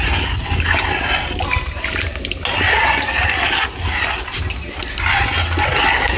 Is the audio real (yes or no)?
yes